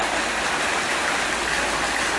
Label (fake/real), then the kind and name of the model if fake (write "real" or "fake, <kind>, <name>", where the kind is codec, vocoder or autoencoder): real